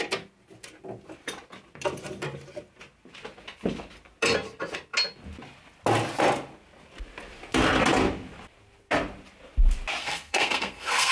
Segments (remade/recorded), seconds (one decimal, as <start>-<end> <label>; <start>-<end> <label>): 0.0-10.0 recorded; 10.0-11.1 remade